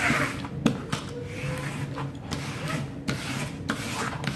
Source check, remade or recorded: recorded